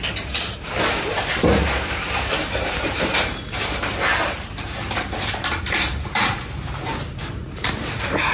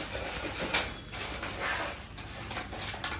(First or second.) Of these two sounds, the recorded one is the second